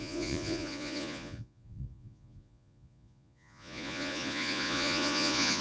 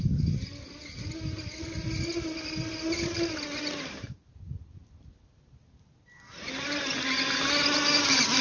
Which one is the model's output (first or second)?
first